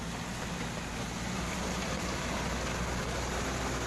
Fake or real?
real